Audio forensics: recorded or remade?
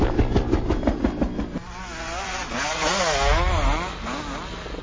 recorded